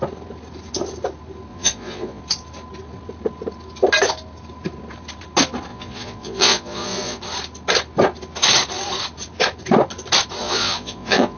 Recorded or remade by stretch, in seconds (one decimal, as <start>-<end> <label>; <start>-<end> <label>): 0.0-1.5 recorded; 1.5-2.2 remade; 2.2-5.7 recorded; 5.7-7.2 remade; 7.2-10.4 recorded; 10.4-11.4 remade